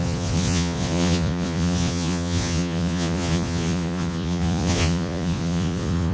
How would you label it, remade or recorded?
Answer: remade